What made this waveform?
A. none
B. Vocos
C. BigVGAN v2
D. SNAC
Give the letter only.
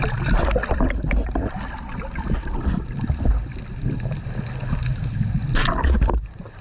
A